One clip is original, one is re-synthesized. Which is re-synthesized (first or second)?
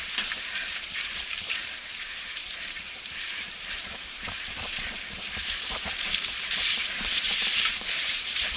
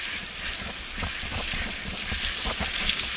first